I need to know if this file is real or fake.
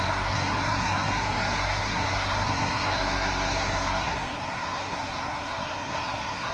fake